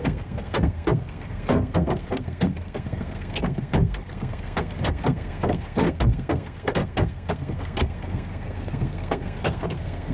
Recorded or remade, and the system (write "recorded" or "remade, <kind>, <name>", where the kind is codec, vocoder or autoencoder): remade, codec, SNAC